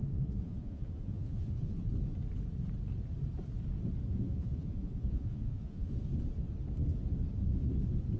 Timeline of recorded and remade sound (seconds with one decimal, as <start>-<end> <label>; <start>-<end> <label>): 0.0-1.9 remade; 1.9-4.1 recorded; 4.1-5.9 remade; 5.9-8.2 recorded